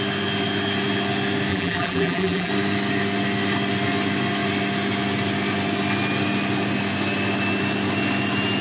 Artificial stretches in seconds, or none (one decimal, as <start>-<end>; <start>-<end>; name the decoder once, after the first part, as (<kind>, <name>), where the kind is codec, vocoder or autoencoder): 1.5-2.5 (vocoder, BigVGAN v2)